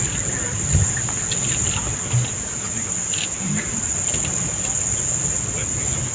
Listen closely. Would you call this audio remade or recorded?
recorded